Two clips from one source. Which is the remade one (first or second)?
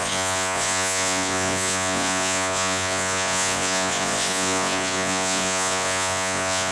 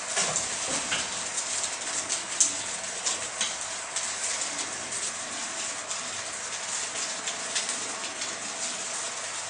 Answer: first